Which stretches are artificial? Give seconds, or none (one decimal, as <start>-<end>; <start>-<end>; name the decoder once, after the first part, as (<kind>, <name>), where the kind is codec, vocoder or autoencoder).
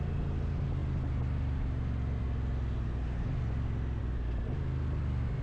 none